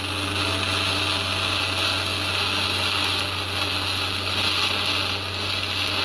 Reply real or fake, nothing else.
real